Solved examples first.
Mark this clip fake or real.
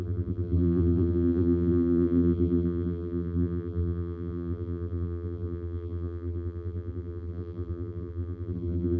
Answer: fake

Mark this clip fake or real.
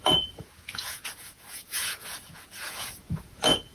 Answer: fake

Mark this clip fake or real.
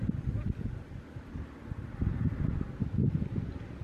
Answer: real